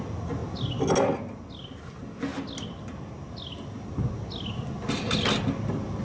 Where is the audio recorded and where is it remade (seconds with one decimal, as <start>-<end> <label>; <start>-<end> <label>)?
0.0-6.0 recorded